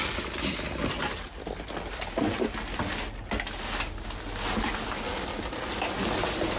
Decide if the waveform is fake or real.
real